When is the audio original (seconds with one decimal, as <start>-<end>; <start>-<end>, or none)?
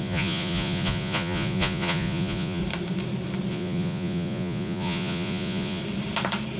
2.6-3.5; 5.8-6.6